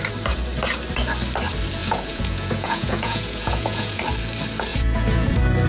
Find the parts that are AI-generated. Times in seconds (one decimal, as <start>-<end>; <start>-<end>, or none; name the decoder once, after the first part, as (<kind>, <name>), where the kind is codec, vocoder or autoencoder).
1.8-4.0 (vocoder, Vocos); 4.7-5.3